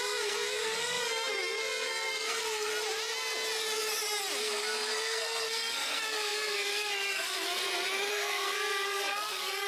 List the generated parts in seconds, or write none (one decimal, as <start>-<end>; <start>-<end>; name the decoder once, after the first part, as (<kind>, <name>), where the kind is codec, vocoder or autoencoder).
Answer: 0.0-2.7 (codec, SNAC); 4.4-7.6; 8.1-9.7